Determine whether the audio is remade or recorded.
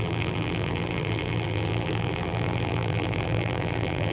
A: remade